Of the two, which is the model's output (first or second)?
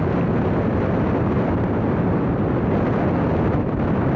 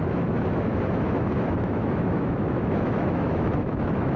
second